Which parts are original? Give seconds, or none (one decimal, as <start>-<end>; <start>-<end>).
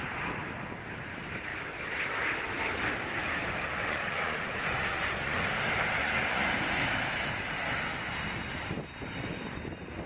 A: 0.0-3.8; 5.4-6.0; 6.8-10.1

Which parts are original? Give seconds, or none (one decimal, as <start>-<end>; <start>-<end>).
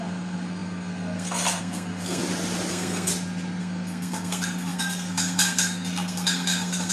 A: 2.2-2.7; 3.1-3.6